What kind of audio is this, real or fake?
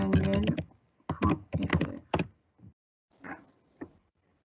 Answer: real